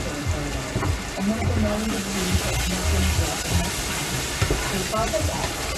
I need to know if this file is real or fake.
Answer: real